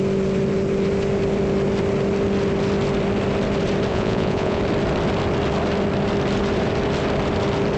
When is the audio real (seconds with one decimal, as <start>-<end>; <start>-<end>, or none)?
0.0-3.9; 4.6-7.8